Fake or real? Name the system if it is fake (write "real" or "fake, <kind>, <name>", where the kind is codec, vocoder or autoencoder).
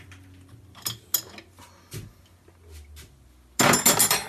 real